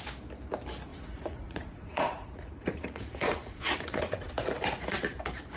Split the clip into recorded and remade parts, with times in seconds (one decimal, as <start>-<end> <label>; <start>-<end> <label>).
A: 0.0-0.9 recorded; 0.9-4.3 remade; 4.3-5.6 recorded

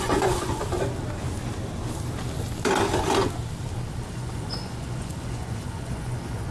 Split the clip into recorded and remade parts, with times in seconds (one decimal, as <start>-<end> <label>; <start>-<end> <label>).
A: 0.0-0.6 remade; 0.6-4.1 recorded; 4.1-6.5 remade

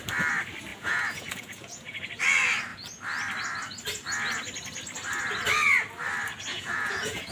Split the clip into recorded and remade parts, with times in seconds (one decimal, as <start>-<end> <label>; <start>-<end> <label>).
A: 0.0-0.7 recorded; 0.7-2.2 remade; 2.2-6.5 recorded; 6.5-7.3 remade

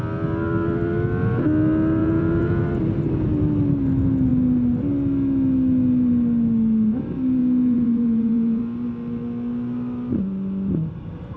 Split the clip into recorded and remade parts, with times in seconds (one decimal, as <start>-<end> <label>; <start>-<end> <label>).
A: 0.0-2.0 recorded; 2.0-2.6 remade; 2.6-7.4 recorded; 7.4-8.6 remade; 8.6-11.4 recorded